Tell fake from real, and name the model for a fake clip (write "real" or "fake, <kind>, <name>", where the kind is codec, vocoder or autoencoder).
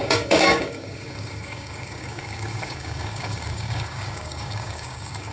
fake, codec, DAC